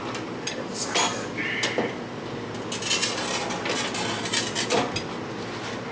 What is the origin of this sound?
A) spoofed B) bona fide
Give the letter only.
B